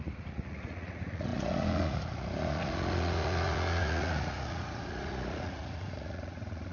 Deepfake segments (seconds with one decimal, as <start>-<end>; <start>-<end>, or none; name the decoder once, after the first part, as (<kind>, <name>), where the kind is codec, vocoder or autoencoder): 0.0-6.7 (vocoder, Vocos)